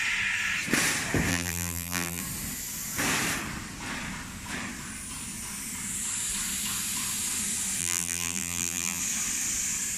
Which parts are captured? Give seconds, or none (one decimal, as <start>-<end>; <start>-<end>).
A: 0.0-1.3; 2.2-7.8; 9.0-10.0